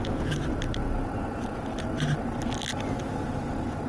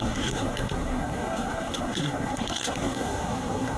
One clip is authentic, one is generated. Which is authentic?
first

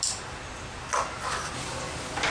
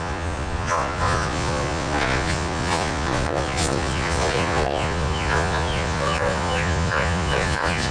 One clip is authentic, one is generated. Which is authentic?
first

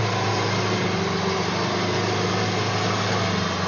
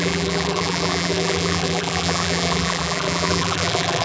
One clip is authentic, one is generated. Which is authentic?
first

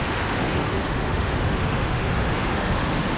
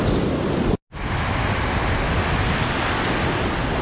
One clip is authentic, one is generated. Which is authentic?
second